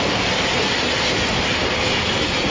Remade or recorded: recorded